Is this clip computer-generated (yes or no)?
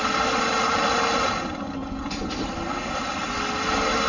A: no